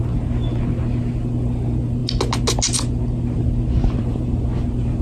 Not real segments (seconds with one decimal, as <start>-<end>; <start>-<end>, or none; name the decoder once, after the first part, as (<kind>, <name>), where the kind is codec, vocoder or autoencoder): none